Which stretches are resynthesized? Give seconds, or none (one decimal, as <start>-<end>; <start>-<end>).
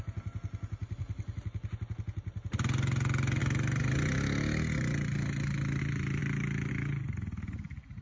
none